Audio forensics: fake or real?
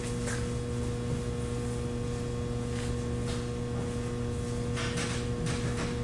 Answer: real